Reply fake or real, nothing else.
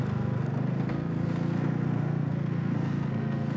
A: fake